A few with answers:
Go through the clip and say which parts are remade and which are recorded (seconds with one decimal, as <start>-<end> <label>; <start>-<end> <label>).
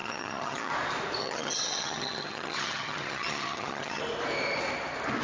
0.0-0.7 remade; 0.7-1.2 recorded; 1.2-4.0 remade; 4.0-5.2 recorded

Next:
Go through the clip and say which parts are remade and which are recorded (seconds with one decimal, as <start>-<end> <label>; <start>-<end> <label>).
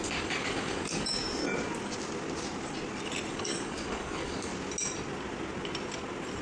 0.0-1.4 remade; 1.4-3.3 recorded; 3.3-4.5 remade; 4.5-6.4 recorded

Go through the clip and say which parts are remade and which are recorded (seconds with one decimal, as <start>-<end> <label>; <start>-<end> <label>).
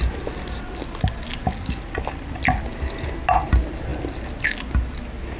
0.0-5.4 recorded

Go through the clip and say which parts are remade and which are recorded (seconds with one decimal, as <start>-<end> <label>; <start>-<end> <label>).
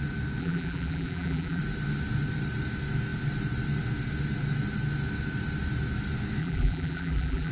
0.0-0.4 recorded; 0.4-1.6 remade; 1.6-6.4 recorded; 6.4-7.5 remade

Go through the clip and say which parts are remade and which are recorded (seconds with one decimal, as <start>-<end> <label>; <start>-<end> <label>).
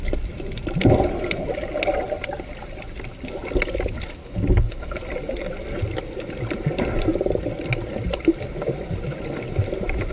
0.0-4.2 recorded; 4.2-5.0 remade; 5.0-10.1 recorded